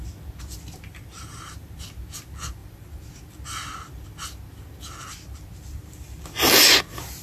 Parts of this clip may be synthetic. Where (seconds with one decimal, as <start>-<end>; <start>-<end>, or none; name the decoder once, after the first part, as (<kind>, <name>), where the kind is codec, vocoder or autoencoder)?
none